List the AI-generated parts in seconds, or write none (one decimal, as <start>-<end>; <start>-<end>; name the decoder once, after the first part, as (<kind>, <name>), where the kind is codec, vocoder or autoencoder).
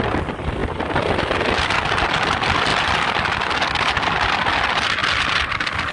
none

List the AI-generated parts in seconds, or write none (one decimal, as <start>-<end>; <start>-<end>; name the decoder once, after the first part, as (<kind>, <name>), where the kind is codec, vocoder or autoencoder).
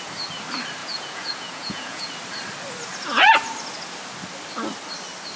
0.8-2.1 (vocoder, Vocos)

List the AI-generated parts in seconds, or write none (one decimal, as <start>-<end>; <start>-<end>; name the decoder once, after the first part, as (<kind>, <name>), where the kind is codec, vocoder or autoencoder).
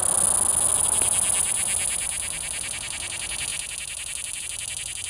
none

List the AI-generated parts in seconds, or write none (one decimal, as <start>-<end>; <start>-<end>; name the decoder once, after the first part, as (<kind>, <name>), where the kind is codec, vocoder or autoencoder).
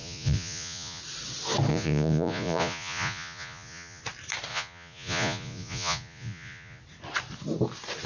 0.0-1.0 (vocoder, Vocos); 1.7-4.0; 4.5-6.8